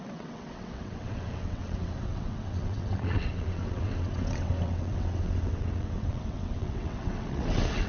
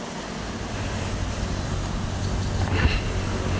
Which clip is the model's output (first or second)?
first